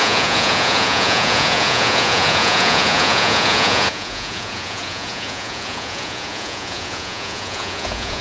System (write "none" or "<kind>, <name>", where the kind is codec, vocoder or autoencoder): vocoder, Vocos